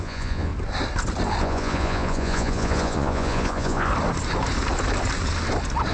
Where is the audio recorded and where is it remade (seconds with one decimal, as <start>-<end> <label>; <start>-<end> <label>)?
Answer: 0.0-0.5 remade; 0.5-1.4 recorded; 1.4-3.9 remade; 3.9-5.9 recorded